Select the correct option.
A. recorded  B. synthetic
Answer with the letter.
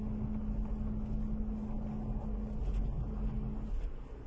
A